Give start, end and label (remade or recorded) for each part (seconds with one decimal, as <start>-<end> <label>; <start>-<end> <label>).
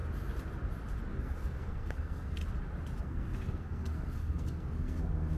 0.0-1.2 recorded; 1.2-2.4 remade; 2.4-3.0 recorded; 3.0-5.4 remade